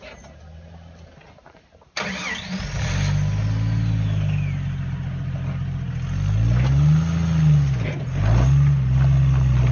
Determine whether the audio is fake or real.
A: real